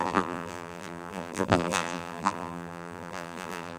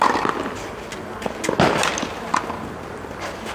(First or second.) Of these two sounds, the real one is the second